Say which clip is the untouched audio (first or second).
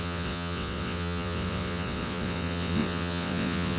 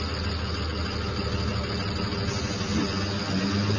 second